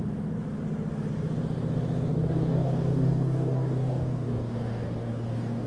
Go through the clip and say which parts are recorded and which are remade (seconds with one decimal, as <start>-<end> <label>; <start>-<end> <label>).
0.0-2.1 recorded; 2.1-5.7 remade